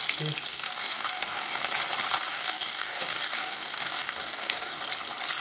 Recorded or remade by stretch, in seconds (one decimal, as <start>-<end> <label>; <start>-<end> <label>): 0.0-0.5 recorded; 0.5-1.6 remade; 1.6-2.3 recorded; 2.3-4.8 remade; 4.8-5.4 recorded